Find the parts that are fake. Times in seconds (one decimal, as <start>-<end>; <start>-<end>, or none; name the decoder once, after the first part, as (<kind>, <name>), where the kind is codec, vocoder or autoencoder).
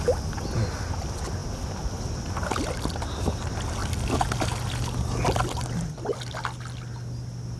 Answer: none